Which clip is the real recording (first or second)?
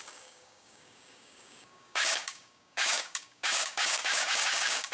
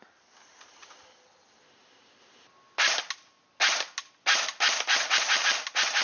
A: second